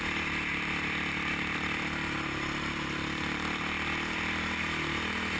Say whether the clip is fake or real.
real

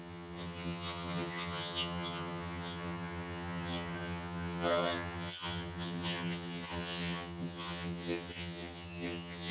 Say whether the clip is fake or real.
fake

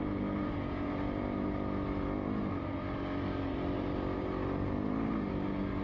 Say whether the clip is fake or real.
real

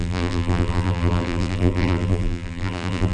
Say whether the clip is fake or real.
fake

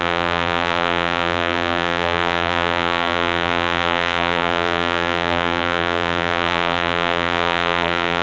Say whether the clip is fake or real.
fake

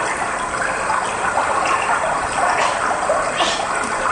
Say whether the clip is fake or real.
real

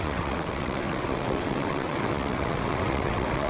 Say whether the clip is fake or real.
fake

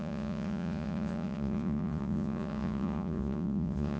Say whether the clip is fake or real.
fake